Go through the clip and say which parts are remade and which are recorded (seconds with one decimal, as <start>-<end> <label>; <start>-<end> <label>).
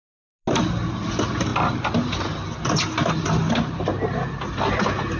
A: 0.0-5.2 recorded